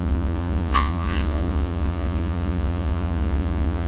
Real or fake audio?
fake